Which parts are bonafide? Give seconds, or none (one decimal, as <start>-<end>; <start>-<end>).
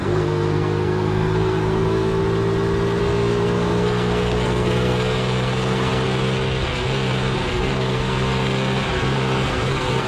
2.2-3.0